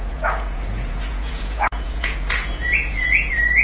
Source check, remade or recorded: remade